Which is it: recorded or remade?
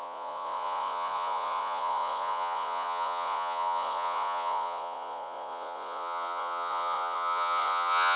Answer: remade